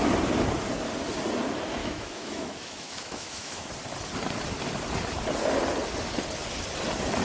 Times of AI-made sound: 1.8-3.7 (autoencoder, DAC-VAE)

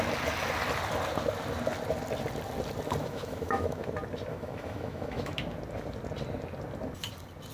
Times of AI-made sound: 3.0-3.9 (autoencoder, DAC-VAE); 4.3-5.4

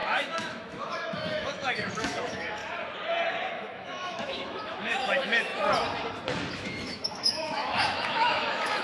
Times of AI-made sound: 0.0-2.6 (autoencoder, DAC-VAE); 3.5-5.5; 6.5-8.8

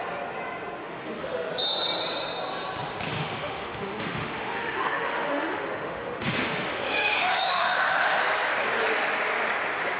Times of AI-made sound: 0.8-1.5 (autoencoder, DAC-VAE); 3.1-8.2

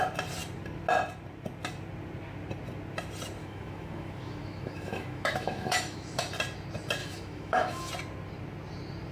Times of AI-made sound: 3.4-6.2 (autoencoder, DAC-VAE); 7.0-7.9